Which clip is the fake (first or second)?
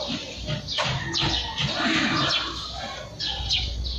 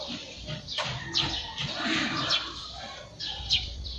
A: second